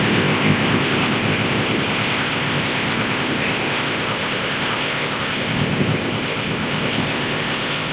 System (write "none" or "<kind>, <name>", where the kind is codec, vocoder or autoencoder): codec, ZipCodec